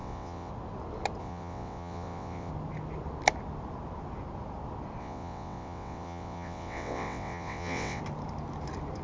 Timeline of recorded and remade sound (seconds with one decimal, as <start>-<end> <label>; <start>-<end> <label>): 0.0-0.5 remade; 0.5-1.2 recorded; 1.2-2.5 remade; 2.5-5.0 recorded; 5.0-8.0 remade; 8.0-9.0 recorded